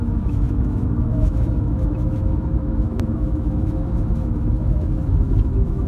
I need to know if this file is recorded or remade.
remade